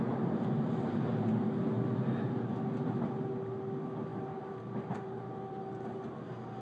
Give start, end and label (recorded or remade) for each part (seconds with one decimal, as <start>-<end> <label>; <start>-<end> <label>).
0.0-6.6 recorded